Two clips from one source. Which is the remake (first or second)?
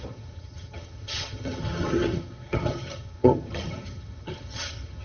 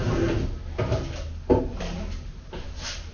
first